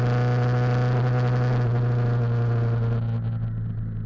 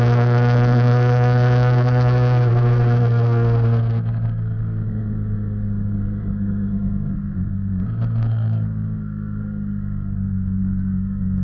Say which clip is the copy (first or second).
second